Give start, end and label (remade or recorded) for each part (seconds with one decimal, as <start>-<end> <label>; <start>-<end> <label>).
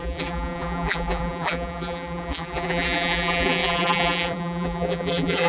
0.0-5.5 remade